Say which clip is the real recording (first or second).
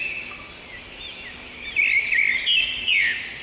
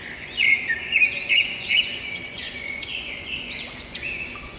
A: first